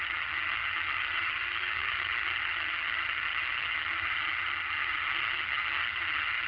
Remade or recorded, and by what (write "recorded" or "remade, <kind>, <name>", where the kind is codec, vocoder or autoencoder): remade, vocoder, HiFi-GAN